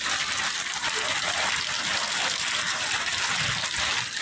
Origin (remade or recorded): recorded